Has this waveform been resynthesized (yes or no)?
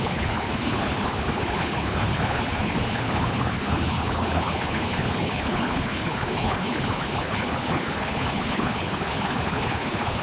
yes